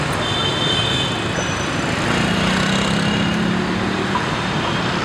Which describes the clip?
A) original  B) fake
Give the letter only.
A